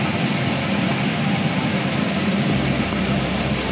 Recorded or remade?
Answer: recorded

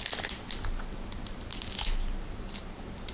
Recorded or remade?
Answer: recorded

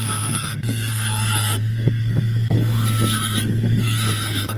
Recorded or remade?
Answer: remade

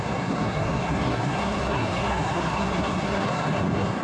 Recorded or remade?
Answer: remade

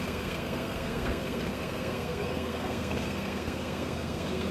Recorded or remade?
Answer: remade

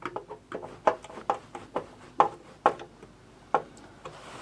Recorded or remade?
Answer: recorded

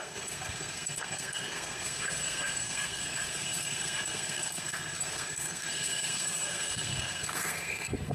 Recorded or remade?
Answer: remade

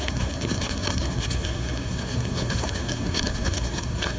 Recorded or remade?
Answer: remade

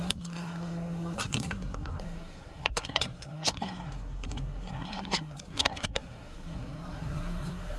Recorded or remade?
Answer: remade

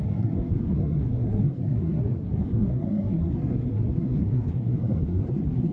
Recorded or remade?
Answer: remade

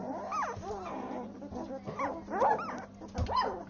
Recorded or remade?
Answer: recorded